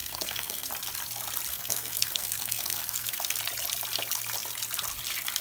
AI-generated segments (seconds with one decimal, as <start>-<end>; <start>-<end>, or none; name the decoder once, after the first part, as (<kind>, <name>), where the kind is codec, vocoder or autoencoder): 0.0-0.7 (codec, SNAC); 1.5-3.4